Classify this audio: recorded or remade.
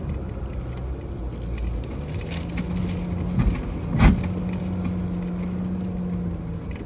recorded